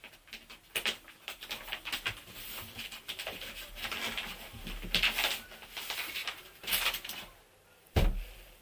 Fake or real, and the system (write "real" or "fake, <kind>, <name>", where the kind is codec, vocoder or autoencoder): real